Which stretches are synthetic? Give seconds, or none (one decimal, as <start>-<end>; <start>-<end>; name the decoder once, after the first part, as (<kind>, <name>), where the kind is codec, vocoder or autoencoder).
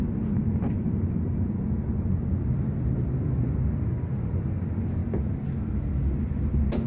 none